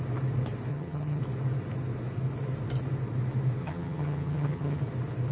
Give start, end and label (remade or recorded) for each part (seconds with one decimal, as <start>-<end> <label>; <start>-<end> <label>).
0.0-0.7 recorded; 0.7-1.2 remade; 1.2-3.6 recorded; 3.6-4.8 remade; 4.8-5.3 recorded

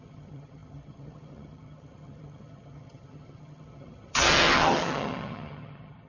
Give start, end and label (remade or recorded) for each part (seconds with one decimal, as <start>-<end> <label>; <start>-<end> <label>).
0.0-6.1 remade